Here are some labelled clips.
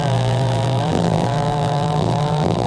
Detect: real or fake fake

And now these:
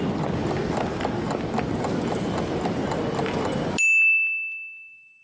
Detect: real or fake real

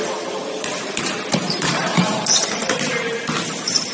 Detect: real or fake fake